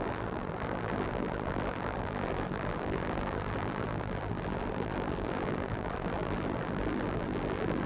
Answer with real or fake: fake